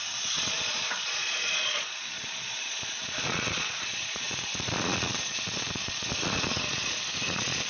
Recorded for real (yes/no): no